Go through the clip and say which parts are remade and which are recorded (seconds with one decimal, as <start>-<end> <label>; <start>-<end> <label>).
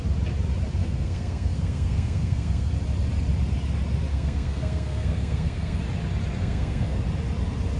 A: 0.0-0.8 recorded; 0.8-2.7 remade; 2.7-4.1 recorded; 4.1-5.8 remade; 5.8-6.4 recorded; 6.4-7.0 remade; 7.0-7.8 recorded